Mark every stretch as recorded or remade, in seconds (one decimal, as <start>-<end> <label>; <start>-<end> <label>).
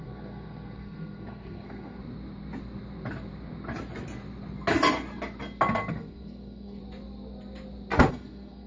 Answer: 0.0-2.0 remade; 2.0-5.9 recorded; 5.9-6.8 remade; 6.8-8.1 recorded; 8.1-8.7 remade